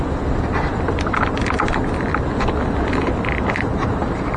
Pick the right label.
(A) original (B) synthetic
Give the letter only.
A